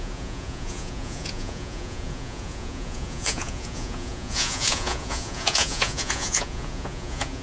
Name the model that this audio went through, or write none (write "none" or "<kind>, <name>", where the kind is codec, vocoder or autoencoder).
vocoder, Vocos